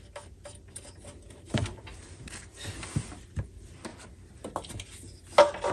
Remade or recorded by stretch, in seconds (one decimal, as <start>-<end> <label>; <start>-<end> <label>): 0.0-5.7 recorded